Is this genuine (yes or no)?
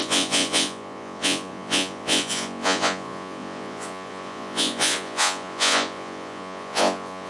no